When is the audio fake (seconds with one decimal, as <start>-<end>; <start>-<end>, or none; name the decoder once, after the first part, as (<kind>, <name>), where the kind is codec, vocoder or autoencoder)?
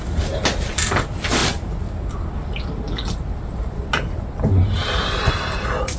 none